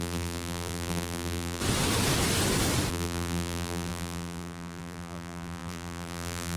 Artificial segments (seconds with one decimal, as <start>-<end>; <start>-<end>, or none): 0.0-1.6; 2.9-6.6